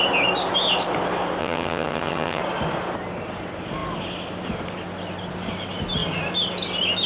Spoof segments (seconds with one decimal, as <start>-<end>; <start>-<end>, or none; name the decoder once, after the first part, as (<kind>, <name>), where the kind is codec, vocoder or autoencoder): 1.4-2.4 (vocoder, HiFi-GAN)